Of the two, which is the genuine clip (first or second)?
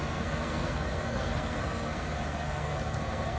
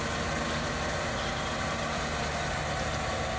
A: second